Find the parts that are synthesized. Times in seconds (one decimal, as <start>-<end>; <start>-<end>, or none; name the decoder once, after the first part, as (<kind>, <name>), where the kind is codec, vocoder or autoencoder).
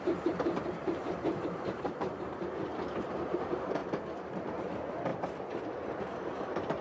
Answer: 0.0-3.8 (vocoder, BigVGAN v2); 4.4-5.1; 6.0-6.8